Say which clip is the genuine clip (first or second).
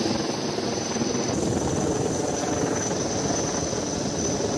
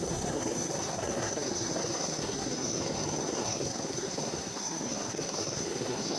first